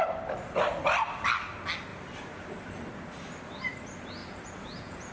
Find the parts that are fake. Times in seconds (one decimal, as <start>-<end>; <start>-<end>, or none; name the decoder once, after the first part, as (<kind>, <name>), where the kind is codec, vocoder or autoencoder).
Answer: 4.2-5.1 (vocoder, Vocos)